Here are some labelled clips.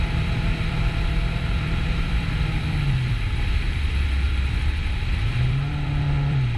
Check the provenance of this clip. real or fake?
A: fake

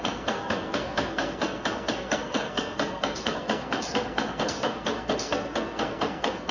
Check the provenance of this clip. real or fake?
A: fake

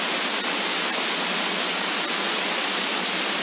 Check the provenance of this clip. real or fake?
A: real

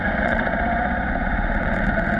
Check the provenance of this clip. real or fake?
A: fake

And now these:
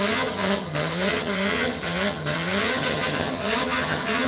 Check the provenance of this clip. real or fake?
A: fake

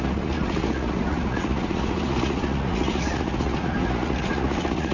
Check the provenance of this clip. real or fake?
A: fake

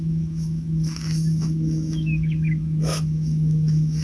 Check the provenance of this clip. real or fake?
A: fake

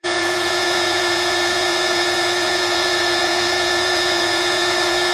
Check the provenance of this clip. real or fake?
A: fake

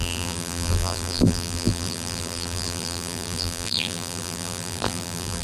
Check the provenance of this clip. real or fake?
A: fake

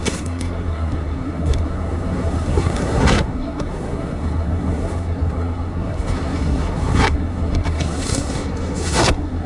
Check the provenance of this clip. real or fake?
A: fake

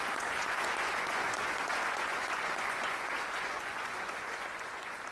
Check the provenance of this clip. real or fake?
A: fake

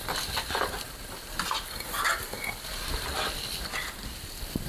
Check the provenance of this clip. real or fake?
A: real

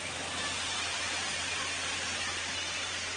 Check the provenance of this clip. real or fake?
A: real